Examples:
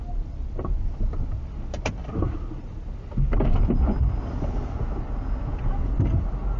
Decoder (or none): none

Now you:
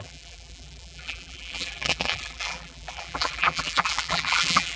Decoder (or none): vocoder, BigVGAN v2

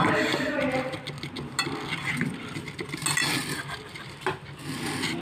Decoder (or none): none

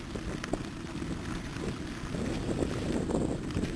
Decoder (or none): none